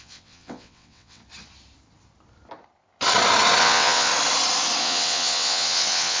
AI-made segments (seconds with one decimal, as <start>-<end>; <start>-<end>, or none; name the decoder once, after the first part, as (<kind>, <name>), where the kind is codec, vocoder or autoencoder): 0.0-1.2 (vocoder, WaveNeXt); 3.6-4.1; 4.8-6.2

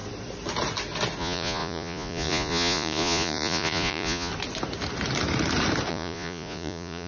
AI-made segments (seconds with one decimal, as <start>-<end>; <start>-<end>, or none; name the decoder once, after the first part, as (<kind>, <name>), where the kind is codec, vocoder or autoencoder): 1.2-4.3 (vocoder, Vocos); 5.9-7.1

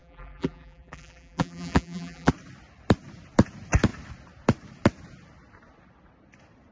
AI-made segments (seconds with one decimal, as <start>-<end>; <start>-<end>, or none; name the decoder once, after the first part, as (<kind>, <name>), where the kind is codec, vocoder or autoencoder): 0.0-2.3 (vocoder, BigVGAN v2)

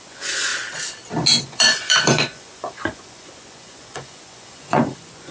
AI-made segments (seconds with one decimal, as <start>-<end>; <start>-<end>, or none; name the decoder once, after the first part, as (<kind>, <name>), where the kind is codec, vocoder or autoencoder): 0.0-0.5 (vocoder, Vocos); 1.4-5.3

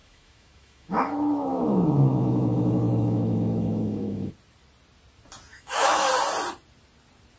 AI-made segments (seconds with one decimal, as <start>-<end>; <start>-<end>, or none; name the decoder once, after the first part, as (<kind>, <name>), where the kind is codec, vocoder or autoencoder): 0.0-4.3 (autoencoder, DAC-VAE); 5.5-6.1